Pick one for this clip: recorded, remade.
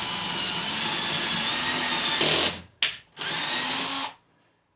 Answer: recorded